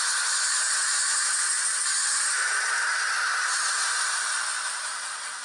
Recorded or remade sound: recorded